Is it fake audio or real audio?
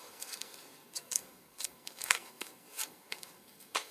fake